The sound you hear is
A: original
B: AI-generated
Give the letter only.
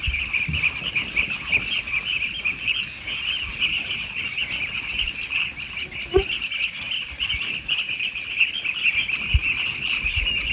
A